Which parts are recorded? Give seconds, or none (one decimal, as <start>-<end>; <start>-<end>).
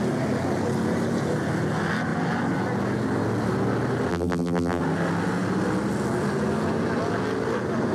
0.0-4.1; 4.8-7.9